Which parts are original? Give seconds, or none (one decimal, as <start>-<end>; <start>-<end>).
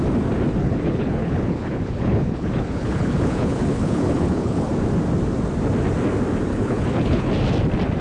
0.0-0.6; 4.7-6.5; 7.3-8.0